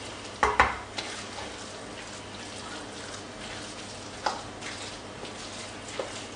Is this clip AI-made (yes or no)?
no